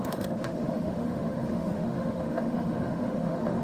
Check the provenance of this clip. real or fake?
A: fake